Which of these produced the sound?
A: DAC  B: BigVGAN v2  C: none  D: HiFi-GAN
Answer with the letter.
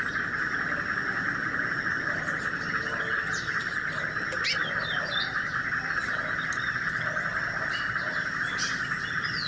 C